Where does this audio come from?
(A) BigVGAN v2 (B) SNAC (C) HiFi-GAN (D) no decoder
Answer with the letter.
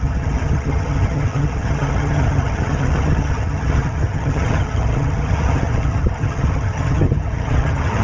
C